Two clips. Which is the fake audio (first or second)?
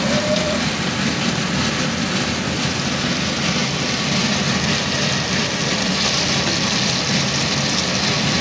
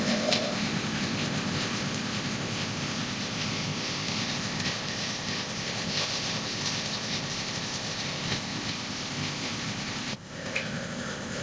second